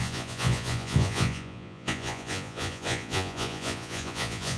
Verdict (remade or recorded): remade